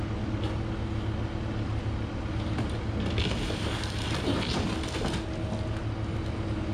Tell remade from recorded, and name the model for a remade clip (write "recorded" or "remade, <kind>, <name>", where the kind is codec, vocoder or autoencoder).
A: recorded